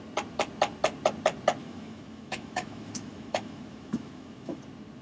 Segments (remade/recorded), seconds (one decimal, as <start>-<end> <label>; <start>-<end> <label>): 0.0-1.6 recorded; 1.6-4.6 remade; 4.6-5.0 recorded